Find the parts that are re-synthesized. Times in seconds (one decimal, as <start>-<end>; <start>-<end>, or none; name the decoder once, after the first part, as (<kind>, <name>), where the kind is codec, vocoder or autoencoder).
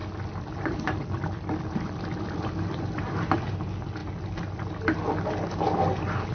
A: 0.0-3.4 (vocoder, BigVGAN v2)